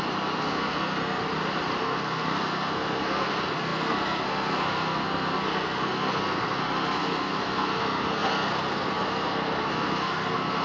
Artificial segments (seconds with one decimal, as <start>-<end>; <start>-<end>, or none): 0.0-1.2; 1.8-10.6